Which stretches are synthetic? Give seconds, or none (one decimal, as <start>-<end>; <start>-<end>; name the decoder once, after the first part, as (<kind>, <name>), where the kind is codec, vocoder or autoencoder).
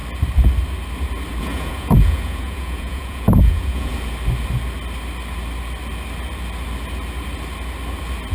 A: 1.4-3.9 (vocoder, Vocos)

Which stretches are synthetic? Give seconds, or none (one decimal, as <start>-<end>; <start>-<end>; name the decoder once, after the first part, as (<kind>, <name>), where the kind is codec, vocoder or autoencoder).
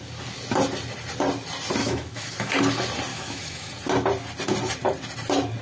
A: 1.8-2.5 (autoencoder, DAC-VAE); 3.1-3.7